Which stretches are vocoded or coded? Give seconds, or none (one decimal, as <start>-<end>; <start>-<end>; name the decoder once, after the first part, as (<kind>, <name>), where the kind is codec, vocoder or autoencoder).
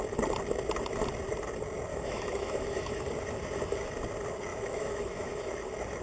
1.9-3.0 (autoencoder, DAC-VAE); 4.5-5.5